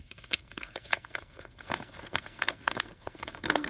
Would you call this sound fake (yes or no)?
yes